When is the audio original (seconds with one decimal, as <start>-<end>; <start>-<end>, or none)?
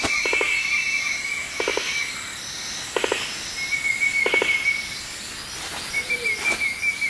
1.7-5.9